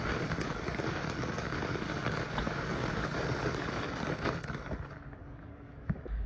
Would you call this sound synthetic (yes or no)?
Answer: yes